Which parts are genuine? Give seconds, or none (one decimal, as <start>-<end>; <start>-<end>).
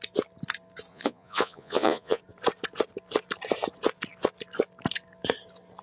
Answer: 0.0-0.9; 2.2-5.8